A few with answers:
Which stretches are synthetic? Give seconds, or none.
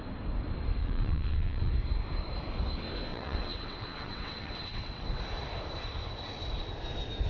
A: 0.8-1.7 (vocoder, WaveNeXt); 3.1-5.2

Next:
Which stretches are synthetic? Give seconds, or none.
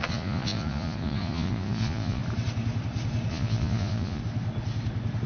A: 0.0-2.2 (vocoder, Vocos); 3.3-4.2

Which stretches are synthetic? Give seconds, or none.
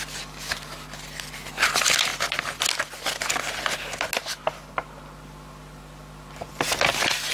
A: none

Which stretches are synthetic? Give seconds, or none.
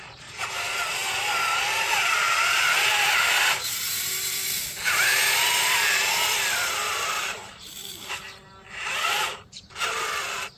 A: 0.0-1.0 (vocoder, BigVGAN v2); 1.6-10.6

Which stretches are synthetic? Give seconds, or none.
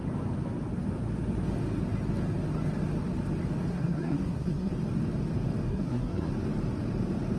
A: 3.7-4.7 (codec, SNAC); 5.7-6.3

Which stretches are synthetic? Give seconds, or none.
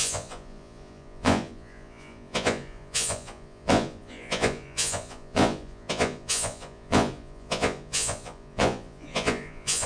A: 0.0-9.9 (vocoder, Vocos)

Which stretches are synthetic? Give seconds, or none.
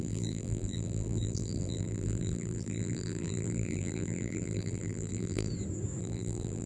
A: 0.0-5.5 (vocoder, BigVGAN v2); 6.0-6.7